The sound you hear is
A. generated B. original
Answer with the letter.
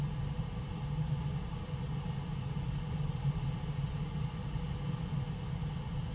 B